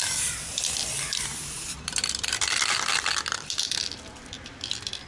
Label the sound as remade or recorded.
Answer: remade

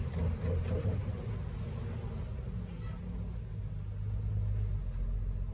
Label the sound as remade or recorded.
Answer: recorded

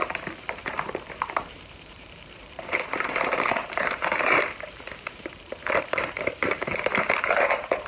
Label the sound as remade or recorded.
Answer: remade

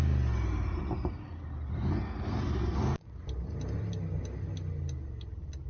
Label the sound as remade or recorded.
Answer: recorded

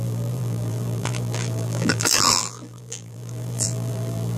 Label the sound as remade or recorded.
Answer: remade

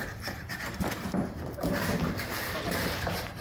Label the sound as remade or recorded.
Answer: remade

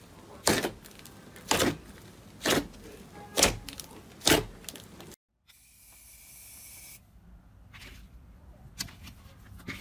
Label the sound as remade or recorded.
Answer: recorded